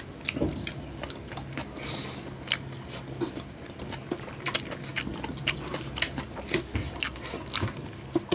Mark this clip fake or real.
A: real